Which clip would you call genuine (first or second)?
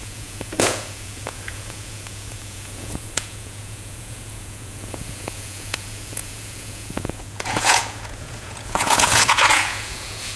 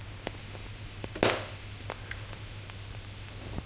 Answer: second